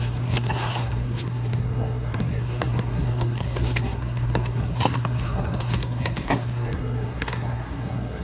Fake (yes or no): yes